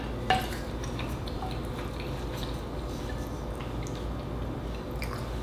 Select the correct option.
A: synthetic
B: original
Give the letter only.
B